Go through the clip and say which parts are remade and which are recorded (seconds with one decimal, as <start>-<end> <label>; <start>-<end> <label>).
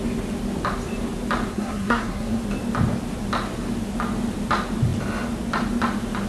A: 0.0-1.5 recorded; 1.5-2.4 remade; 2.4-6.3 recorded